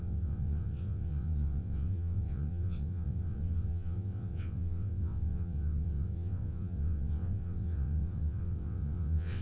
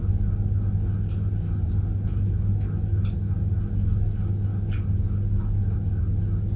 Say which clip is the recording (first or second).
second